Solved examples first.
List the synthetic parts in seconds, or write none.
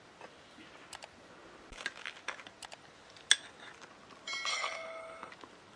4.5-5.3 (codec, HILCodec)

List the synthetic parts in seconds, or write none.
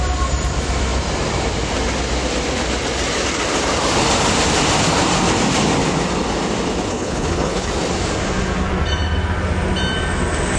6.9-7.7 (codec, HILCodec)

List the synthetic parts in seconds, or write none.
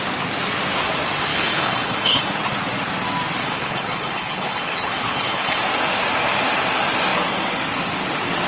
1.3-2.2 (codec, HILCodec); 3.4-5.6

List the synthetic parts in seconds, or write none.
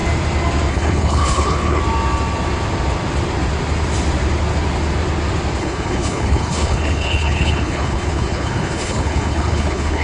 0.7-1.8 (codec, HILCodec); 5.6-10.0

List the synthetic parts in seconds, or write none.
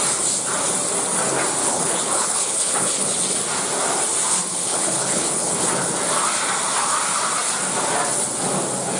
1.6-3.2 (codec, HILCodec); 4.5-5.6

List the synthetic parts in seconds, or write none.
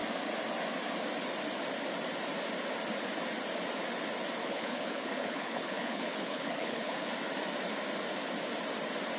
4.4-7.1 (codec, HILCodec)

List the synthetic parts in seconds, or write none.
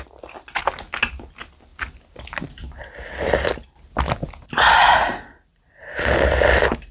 none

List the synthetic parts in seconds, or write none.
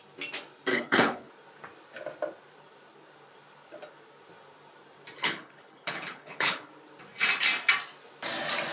0.7-1.3 (codec, HILCodec); 5.2-6.7